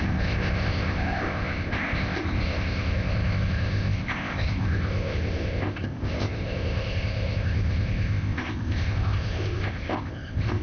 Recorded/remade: remade